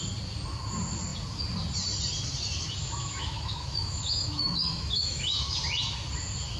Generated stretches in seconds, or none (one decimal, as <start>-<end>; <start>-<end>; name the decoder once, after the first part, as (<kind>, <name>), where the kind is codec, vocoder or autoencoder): 2.8-5.6 (autoencoder, DAC-VAE)